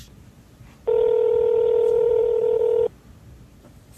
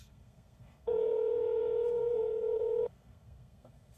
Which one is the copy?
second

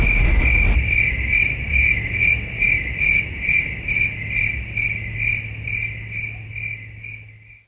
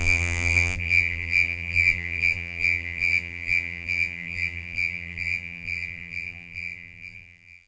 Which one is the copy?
second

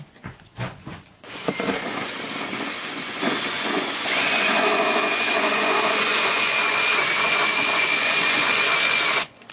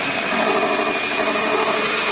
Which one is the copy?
first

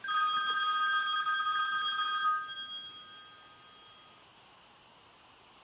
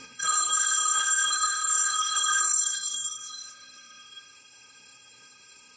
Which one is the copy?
second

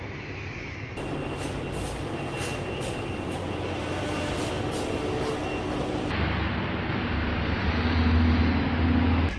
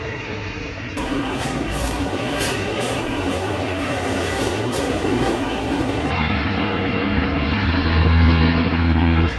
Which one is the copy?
second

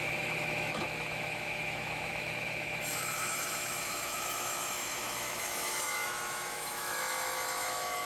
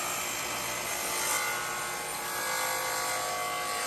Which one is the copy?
first